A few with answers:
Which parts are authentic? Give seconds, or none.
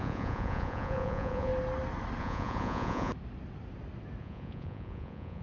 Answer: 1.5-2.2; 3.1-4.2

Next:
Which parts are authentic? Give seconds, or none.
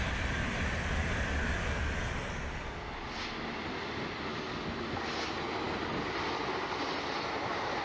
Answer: 0.0-7.8